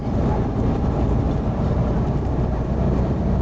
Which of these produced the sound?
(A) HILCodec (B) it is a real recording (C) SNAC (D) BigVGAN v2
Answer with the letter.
D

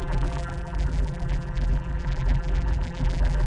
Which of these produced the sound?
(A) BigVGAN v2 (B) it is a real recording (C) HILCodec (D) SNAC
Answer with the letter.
A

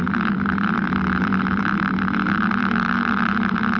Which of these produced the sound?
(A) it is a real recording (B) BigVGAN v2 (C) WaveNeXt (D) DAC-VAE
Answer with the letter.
B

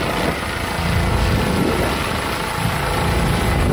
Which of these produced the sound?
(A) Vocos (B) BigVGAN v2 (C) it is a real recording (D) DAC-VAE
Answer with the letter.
C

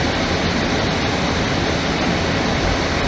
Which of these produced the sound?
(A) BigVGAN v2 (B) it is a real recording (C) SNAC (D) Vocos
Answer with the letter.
B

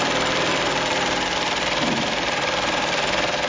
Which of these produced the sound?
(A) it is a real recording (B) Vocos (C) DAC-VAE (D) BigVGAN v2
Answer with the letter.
D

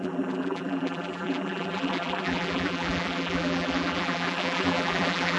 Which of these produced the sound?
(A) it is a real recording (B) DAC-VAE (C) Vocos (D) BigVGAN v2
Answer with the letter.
D